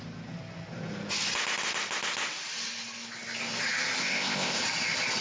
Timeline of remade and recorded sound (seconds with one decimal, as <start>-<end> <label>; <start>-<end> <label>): 0.0-4.0 recorded; 4.0-4.6 remade; 4.6-5.2 recorded